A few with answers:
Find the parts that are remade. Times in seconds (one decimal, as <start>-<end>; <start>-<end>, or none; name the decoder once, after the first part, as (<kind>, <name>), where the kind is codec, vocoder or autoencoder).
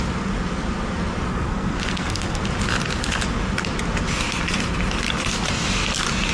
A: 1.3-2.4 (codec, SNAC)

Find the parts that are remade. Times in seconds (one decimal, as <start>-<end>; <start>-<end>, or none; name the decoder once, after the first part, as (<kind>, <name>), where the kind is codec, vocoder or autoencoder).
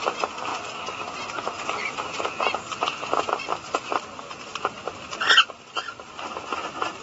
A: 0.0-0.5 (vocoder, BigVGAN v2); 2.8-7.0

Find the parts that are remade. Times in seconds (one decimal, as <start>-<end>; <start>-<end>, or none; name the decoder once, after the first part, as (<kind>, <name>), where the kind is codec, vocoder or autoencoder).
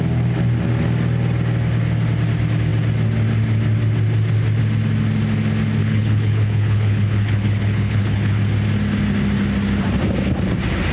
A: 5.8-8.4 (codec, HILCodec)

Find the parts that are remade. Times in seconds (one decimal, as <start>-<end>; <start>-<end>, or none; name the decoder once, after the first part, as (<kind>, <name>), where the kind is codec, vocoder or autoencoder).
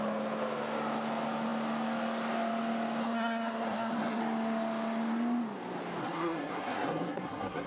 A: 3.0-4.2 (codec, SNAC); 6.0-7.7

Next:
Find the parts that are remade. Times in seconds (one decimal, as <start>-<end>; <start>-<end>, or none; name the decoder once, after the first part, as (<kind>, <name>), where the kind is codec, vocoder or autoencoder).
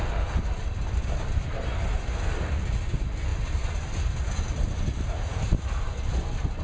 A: none